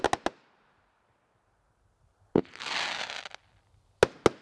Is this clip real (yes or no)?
yes